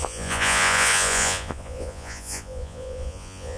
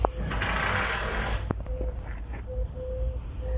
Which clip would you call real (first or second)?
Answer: second